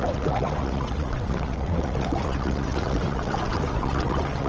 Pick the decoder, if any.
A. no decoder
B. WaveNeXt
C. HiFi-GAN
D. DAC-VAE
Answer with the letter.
B